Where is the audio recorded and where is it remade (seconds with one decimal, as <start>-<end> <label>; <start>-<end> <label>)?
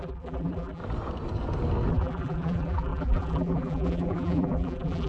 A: 0.0-0.8 remade; 0.8-1.9 recorded; 1.9-5.1 remade